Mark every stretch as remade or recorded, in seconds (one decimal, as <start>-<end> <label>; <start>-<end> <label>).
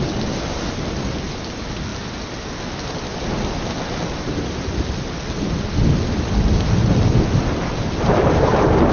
0.0-8.9 recorded